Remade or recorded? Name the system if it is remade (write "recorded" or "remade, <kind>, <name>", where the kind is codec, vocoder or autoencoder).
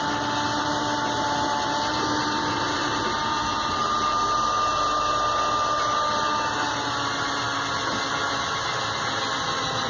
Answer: recorded